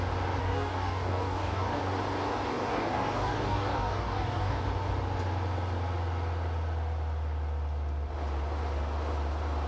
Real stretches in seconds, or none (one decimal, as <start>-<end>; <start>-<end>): 0.0-0.4; 1.8-2.5; 4.6-9.7